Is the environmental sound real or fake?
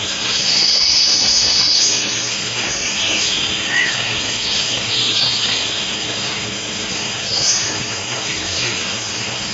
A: fake